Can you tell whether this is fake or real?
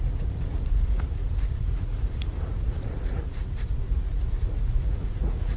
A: fake